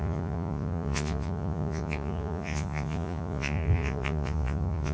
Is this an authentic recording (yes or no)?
no